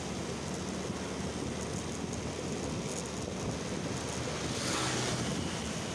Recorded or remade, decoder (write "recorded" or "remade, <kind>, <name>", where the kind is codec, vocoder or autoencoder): recorded